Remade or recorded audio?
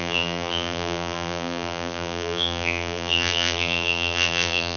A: remade